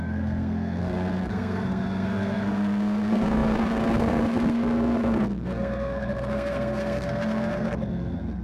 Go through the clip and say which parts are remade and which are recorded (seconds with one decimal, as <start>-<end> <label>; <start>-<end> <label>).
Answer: 0.0-8.4 remade